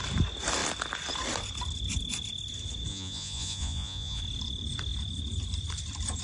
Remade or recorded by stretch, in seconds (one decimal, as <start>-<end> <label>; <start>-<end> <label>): 0.0-2.9 recorded; 2.9-4.2 remade; 4.2-6.2 recorded